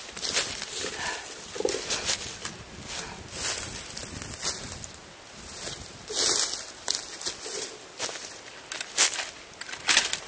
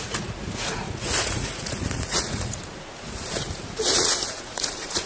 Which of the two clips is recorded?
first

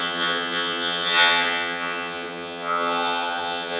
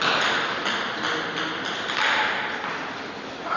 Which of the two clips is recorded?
second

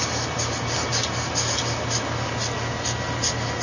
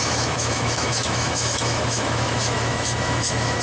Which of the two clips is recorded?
first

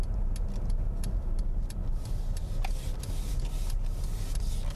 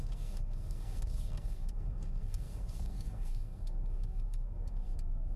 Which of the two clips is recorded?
first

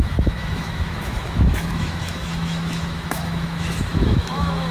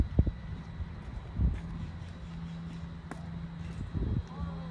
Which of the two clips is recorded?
second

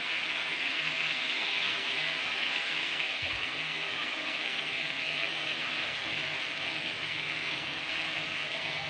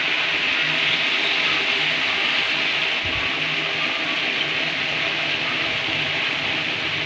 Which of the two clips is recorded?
second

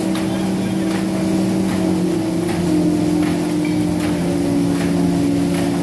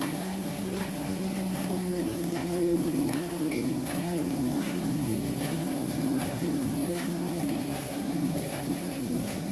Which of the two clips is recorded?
first